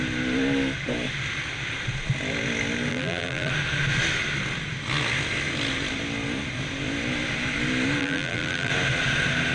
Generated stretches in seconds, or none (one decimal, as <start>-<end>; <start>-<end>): 2.9-3.5; 8.0-8.7